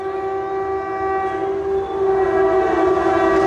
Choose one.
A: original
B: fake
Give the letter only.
A